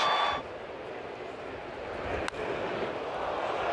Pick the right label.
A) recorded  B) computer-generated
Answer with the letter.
A